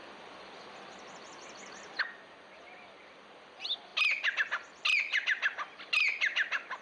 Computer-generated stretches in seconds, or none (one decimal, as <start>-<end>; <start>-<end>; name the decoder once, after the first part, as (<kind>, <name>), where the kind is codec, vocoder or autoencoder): none